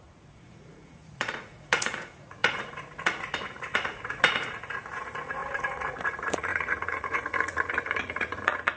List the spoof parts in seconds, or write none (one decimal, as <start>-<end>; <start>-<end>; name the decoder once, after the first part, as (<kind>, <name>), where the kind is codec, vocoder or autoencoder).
0.0-8.8 (vocoder, Vocos)